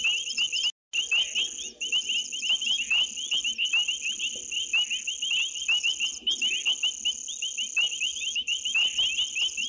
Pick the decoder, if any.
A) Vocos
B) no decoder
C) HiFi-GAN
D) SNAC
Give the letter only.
B